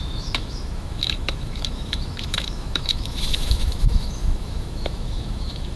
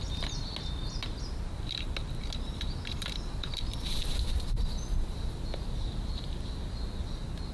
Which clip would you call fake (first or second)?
first